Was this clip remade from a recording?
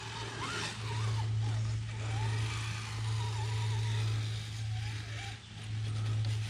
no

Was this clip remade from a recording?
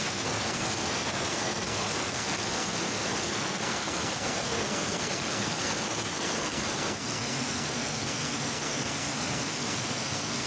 yes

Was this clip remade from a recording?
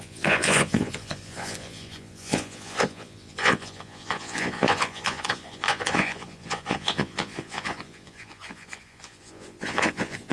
yes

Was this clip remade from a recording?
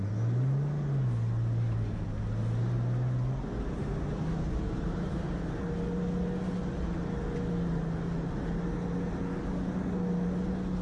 no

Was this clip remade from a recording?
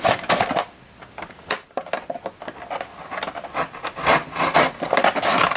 no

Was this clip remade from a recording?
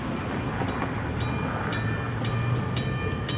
no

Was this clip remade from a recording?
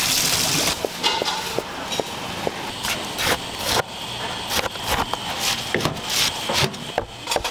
no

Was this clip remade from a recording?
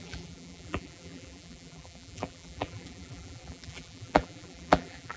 yes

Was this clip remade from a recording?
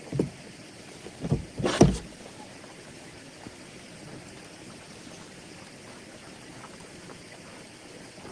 no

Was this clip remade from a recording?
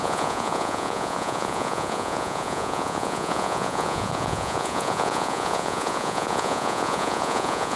yes